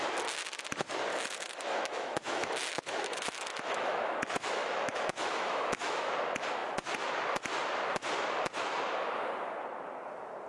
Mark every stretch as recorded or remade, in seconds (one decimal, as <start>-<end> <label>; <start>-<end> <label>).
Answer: 0.0-1.1 recorded; 1.1-6.1 remade; 6.1-10.5 recorded